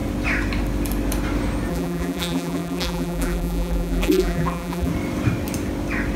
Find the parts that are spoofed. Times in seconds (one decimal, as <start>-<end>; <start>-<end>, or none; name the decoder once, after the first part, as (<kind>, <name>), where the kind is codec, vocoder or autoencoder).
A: 1.7-4.9 (vocoder, BigVGAN v2)